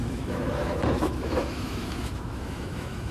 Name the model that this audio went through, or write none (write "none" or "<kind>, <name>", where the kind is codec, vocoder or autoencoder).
autoencoder, DAC-VAE